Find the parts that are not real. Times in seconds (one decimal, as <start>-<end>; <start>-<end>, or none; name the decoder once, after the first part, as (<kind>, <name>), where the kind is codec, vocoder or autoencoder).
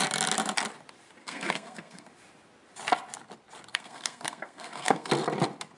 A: 1.2-2.1 (codec, SNAC); 3.7-5.1